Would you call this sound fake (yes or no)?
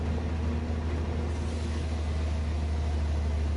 no